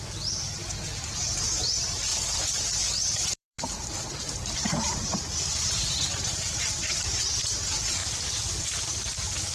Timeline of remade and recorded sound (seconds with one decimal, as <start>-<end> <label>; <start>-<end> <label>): 0.0-2.1 recorded; 2.1-7.2 remade; 7.2-9.5 recorded